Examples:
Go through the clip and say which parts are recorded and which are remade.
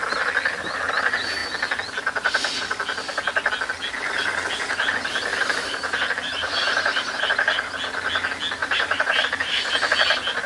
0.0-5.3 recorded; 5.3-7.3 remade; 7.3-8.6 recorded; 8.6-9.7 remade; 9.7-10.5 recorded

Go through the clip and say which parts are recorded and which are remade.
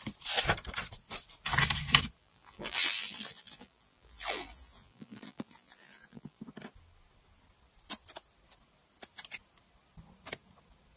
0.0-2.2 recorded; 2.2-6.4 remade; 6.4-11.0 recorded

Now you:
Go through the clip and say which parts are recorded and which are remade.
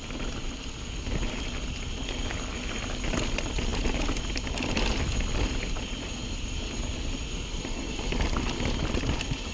0.0-9.5 recorded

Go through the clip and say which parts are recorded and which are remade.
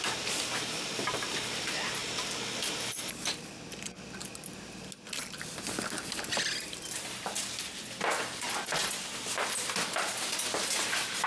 0.0-2.0 remade; 2.0-7.2 recorded; 7.2-11.3 remade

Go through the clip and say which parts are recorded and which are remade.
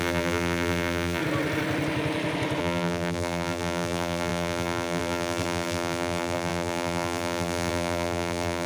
0.0-1.2 remade; 1.2-2.6 recorded; 2.6-8.7 remade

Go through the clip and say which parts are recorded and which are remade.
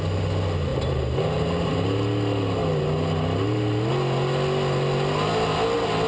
0.0-0.7 recorded; 0.7-1.7 remade; 1.7-6.1 recorded